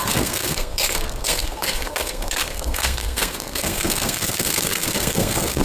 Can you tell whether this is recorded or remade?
remade